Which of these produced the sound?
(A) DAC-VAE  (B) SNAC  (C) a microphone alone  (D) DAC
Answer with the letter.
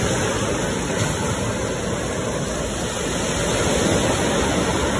C